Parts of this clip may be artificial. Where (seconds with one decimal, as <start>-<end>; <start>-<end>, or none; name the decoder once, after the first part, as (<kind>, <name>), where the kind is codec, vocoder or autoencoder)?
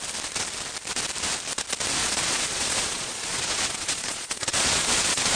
2.0-5.4 (vocoder, Vocos)